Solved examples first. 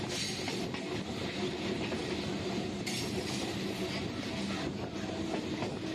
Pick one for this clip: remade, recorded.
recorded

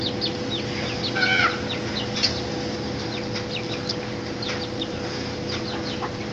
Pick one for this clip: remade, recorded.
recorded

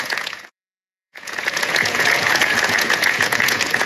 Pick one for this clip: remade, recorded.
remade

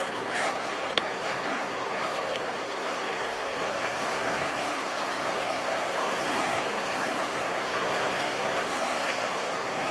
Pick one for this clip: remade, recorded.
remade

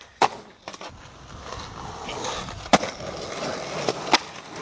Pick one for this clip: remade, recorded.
recorded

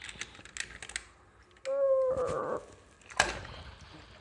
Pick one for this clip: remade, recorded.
recorded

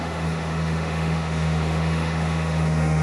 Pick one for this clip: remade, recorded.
remade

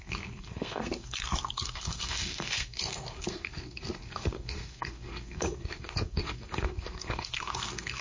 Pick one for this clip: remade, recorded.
remade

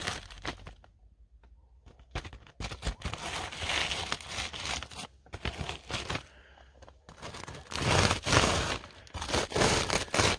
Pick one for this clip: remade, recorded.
recorded